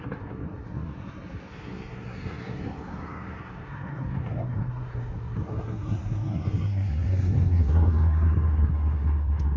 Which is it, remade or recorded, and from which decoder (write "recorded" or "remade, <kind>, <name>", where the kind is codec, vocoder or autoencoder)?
remade, codec, SNAC